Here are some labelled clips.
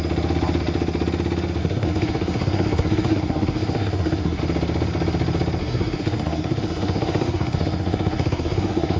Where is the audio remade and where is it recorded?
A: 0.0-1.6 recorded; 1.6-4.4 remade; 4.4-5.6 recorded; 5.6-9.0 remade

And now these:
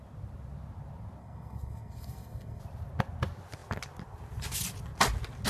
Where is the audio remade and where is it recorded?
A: 0.0-1.2 recorded; 1.2-2.6 remade; 2.6-5.5 recorded

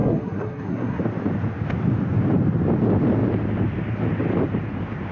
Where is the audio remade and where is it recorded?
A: 0.0-1.0 remade; 1.0-5.1 recorded

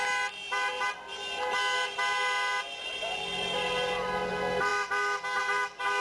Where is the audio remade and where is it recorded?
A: 0.0-6.0 recorded

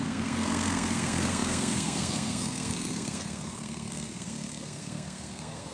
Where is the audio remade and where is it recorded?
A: 0.0-5.7 remade

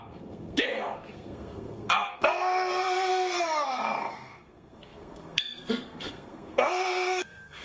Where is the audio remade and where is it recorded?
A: 0.0-7.6 remade

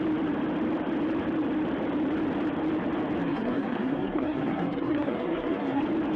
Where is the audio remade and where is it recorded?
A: 0.0-3.2 recorded; 3.2-5.8 remade; 5.8-6.2 recorded